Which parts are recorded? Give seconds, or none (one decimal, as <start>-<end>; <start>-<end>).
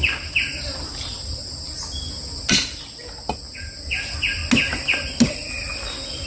0.0-0.5; 1.8-6.3